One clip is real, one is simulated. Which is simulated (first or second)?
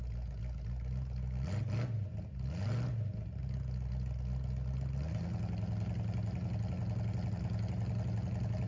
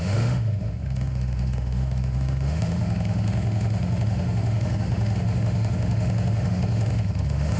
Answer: second